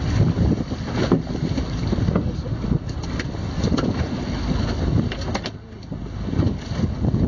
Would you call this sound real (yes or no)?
yes